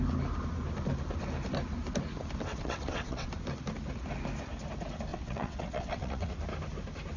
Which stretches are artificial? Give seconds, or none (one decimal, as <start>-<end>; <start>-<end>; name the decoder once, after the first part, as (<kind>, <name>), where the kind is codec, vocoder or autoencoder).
2.5-3.3 (vocoder, WaveNeXt); 5.1-6.3